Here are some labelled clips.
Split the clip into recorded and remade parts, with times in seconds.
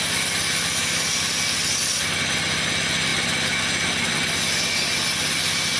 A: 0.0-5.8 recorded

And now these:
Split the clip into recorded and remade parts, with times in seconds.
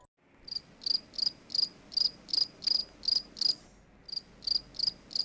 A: 0.0-5.2 recorded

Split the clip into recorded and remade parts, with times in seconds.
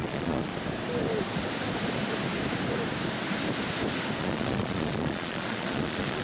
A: 0.0-0.5 remade; 0.5-4.2 recorded; 4.2-6.2 remade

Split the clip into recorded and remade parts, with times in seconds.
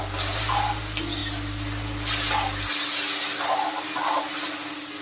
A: 0.0-5.0 recorded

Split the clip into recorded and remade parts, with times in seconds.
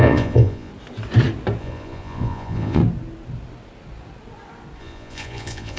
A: 0.0-0.7 remade; 0.7-1.6 recorded; 1.6-2.8 remade; 2.8-4.8 recorded; 4.8-5.8 remade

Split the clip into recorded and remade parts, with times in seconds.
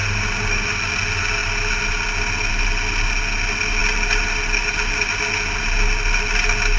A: 0.0-6.8 recorded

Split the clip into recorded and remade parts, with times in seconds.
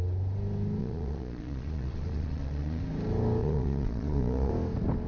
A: 0.0-0.8 recorded; 0.8-2.8 remade; 2.8-3.4 recorded; 3.4-4.5 remade; 4.5-5.1 recorded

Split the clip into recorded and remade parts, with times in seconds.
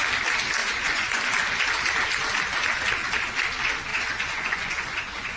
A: 0.0-0.6 recorded; 0.6-1.2 remade; 1.2-3.9 recorded; 3.9-5.4 remade